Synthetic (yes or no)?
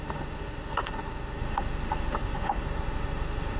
yes